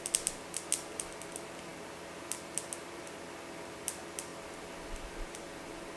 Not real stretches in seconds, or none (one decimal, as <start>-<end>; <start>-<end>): none